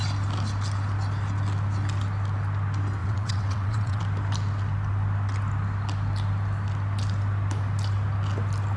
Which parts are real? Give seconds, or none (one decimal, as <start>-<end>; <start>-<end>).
0.0-3.0; 4.0-8.8